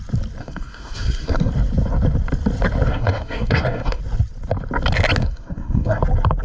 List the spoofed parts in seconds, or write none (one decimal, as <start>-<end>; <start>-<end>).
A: 0.4-1.5; 2.9-4.0; 5.2-6.0